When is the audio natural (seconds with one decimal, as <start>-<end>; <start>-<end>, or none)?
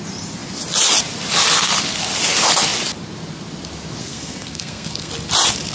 0.0-4.0; 5.1-5.7